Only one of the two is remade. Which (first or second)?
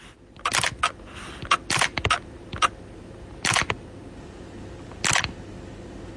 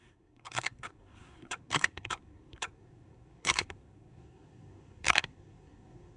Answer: second